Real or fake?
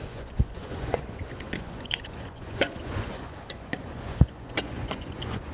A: fake